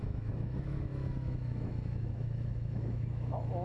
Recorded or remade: remade